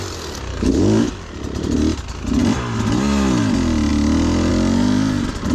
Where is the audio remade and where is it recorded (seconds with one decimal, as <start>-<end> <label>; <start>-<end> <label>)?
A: 0.0-0.5 recorded; 0.5-1.1 remade; 1.1-5.5 recorded